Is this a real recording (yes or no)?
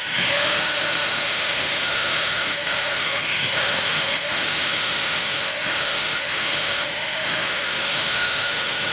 no